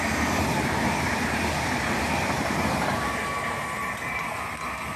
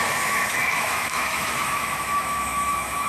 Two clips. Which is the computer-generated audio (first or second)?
second